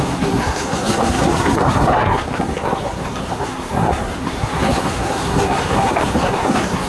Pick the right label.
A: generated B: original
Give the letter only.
A